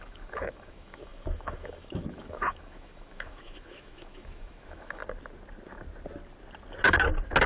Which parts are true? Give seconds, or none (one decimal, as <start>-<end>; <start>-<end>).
5.0-7.5